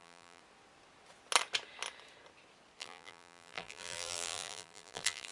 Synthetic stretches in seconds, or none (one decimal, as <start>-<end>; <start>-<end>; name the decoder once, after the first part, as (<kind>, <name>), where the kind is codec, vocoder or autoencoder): 0.0-0.4 (vocoder, BigVGAN v2); 2.8-5.3